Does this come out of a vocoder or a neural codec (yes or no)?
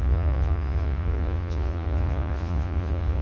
yes